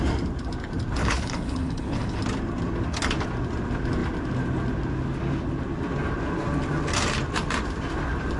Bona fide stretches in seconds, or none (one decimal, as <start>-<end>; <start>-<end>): 0.0-1.0; 2.2-8.4